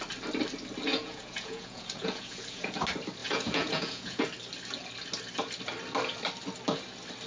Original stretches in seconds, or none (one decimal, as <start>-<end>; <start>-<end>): 0.0-0.9; 2.8-3.2; 4.2-7.3